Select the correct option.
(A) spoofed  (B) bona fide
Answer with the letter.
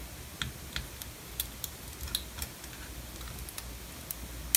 B